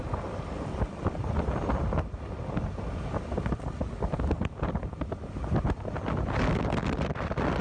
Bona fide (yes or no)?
yes